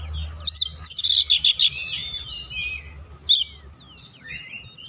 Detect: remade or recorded recorded